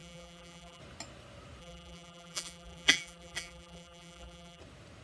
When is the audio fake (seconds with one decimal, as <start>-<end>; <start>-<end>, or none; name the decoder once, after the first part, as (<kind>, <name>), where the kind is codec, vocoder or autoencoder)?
0.0-0.8 (vocoder, BigVGAN v2); 1.6-4.6